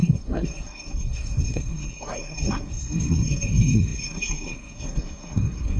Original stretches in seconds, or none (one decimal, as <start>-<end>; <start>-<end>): none